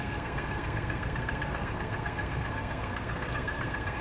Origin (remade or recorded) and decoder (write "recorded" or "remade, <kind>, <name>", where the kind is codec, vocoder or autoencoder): remade, codec, SNAC